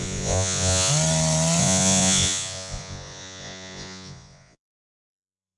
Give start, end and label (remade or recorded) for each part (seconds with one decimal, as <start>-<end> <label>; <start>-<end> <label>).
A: 0.0-0.9 remade; 0.9-1.6 recorded; 1.6-5.6 remade